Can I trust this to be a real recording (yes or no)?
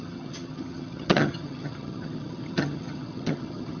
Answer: no